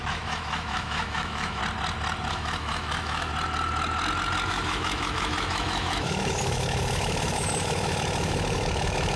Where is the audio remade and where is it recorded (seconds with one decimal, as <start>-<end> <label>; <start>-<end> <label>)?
0.0-1.6 remade; 1.6-2.3 recorded; 2.3-3.3 remade; 3.3-4.5 recorded; 4.5-9.2 remade